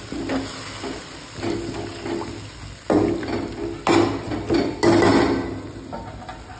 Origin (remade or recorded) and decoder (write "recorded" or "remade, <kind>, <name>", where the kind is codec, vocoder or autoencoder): recorded